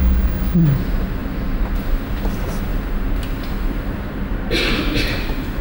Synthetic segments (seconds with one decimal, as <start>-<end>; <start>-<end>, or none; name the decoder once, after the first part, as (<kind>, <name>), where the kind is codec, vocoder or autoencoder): none